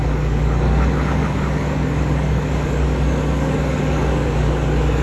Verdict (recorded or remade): remade